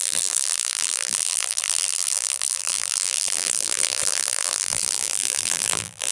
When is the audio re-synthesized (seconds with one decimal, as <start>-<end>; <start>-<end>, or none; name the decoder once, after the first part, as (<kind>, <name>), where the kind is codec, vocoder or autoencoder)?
0.0-6.1 (vocoder, BigVGAN v2)